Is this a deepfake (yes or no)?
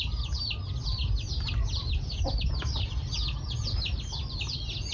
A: no